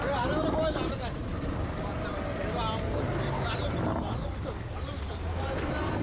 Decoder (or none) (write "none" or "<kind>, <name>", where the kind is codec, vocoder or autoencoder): none